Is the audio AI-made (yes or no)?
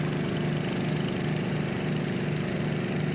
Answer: no